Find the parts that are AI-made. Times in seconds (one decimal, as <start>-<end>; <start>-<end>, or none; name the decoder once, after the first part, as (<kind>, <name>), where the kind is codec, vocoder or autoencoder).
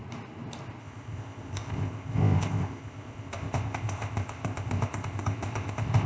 0.8-6.1 (codec, ZipCodec)